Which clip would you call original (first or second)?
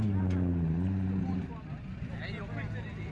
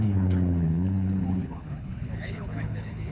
first